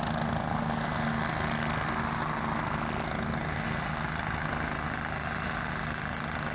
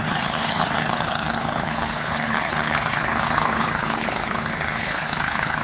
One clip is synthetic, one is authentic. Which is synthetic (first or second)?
second